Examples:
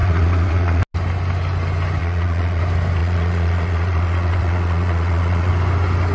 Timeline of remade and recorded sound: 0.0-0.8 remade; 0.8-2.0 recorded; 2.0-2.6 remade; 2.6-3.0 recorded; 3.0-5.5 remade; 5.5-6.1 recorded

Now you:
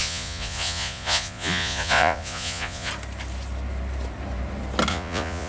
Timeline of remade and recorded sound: 0.0-2.9 remade; 2.9-4.9 recorded; 4.9-5.5 remade

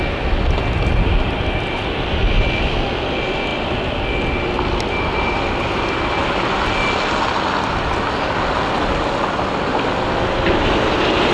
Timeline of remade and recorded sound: 0.0-11.3 recorded

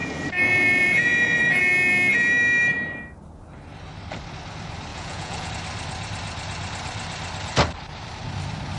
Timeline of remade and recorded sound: 0.0-1.6 remade; 1.6-4.9 recorded; 4.9-5.5 remade; 5.5-8.8 recorded

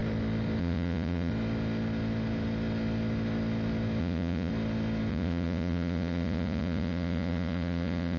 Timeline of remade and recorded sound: 0.0-0.6 recorded; 0.6-1.3 remade; 1.3-4.0 recorded; 4.0-4.5 remade; 4.5-5.1 recorded; 5.1-8.2 remade

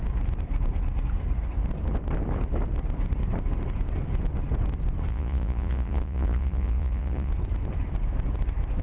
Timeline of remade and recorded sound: 0.0-5.1 recorded; 5.1-7.3 remade; 7.3-8.8 recorded

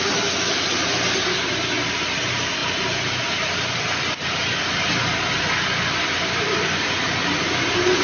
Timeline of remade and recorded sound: 0.0-8.0 recorded